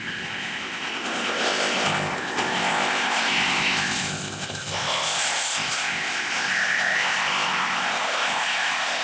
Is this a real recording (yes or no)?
no